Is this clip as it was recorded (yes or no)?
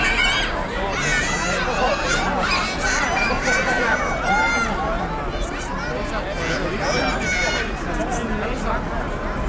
yes